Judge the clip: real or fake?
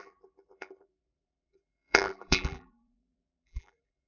fake